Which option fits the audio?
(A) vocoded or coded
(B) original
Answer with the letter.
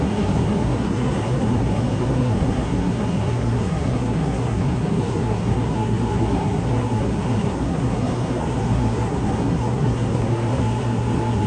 A